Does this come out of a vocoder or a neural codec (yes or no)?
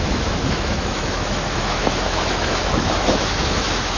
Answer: yes